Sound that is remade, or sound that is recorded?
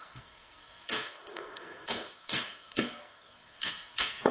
remade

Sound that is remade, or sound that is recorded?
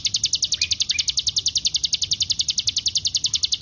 recorded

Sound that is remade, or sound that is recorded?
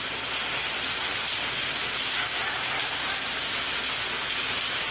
recorded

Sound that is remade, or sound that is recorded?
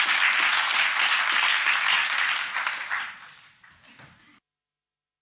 recorded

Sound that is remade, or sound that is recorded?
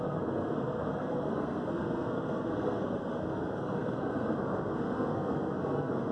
remade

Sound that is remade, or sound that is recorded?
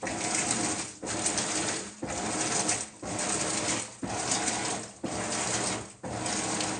recorded